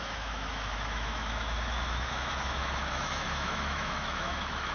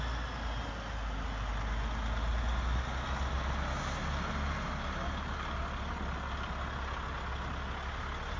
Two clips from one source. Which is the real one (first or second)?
second